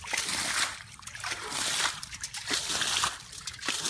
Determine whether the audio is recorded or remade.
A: recorded